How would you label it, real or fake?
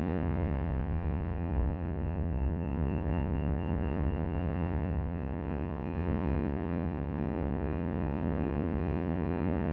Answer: fake